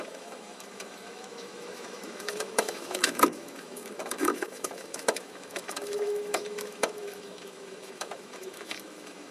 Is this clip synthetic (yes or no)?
yes